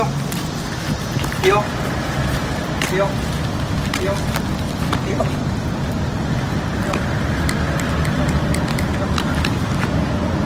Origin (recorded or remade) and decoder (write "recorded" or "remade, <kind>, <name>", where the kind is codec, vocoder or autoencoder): recorded